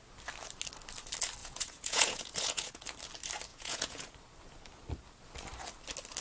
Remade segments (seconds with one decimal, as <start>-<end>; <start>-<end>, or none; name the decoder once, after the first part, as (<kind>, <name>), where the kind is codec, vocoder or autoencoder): 1.4-2.8 (vocoder, Vocos); 3.5-4.1

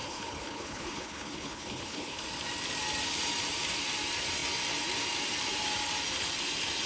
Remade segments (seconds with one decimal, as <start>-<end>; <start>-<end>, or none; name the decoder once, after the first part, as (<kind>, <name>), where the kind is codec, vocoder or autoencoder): 0.0-2.2 (codec, HILCodec)

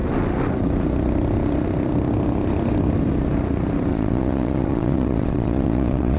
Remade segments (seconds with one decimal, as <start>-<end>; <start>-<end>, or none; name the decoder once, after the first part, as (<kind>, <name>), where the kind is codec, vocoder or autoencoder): 3.9-6.2 (vocoder, Vocos)